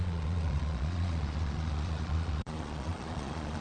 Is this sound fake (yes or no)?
yes